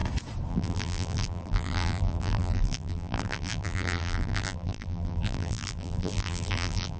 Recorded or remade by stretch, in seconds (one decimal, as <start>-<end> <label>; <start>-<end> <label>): 0.0-0.5 recorded; 0.5-7.0 remade